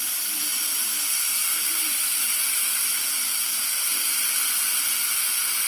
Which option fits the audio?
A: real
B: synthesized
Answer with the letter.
A